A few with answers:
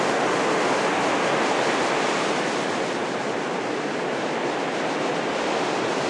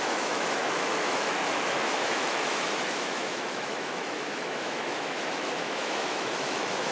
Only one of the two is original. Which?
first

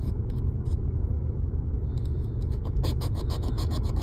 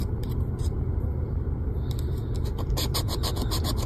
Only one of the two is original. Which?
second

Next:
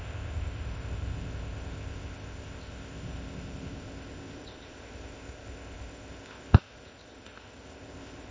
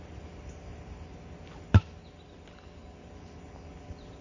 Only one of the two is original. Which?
second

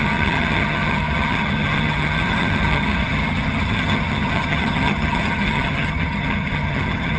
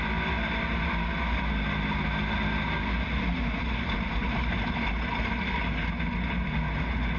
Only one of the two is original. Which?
second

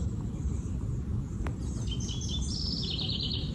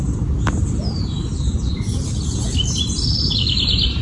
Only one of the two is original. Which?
first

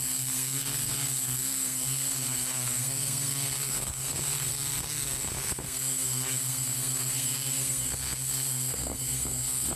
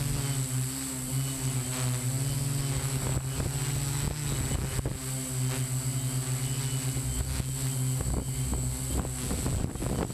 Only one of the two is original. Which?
second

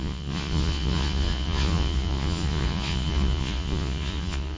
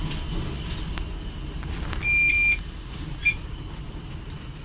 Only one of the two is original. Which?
second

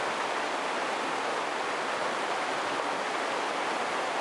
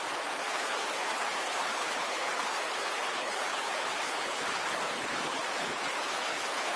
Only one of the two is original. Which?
first